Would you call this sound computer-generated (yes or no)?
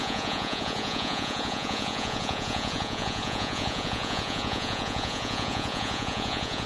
yes